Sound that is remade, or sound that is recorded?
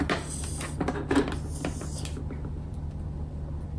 recorded